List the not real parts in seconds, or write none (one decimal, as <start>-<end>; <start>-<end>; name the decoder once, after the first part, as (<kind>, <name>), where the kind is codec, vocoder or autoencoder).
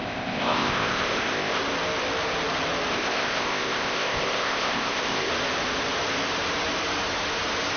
0.0-1.6 (codec, ZipCodec); 2.9-5.3